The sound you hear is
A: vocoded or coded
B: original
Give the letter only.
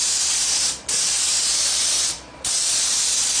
A